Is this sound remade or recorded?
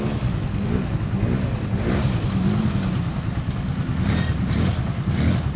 recorded